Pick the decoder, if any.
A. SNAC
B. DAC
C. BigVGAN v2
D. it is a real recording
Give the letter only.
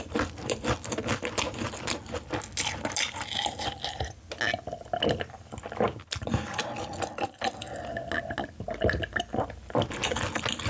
D